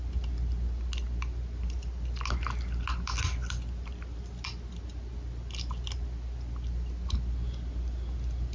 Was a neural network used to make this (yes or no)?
no